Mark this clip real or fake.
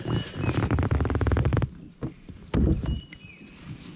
real